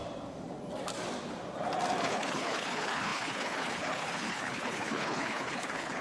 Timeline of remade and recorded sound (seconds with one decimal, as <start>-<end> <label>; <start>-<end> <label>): 0.0-2.1 recorded; 2.1-6.0 remade